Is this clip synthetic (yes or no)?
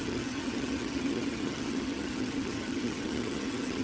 yes